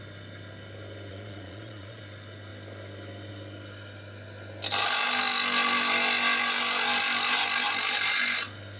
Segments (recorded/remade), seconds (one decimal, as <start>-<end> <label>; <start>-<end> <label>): 0.0-1.1 recorded; 1.1-2.0 remade; 2.0-8.8 recorded